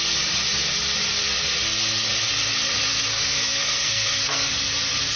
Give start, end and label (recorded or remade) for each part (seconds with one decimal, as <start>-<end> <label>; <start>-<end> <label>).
0.0-2.9 recorded; 2.9-4.5 remade; 4.5-5.2 recorded